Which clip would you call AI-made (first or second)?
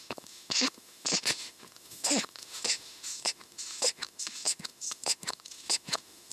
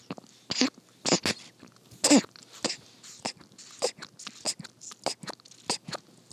first